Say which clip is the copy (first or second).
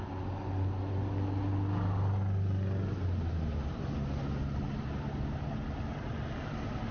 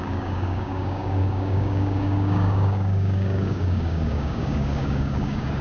second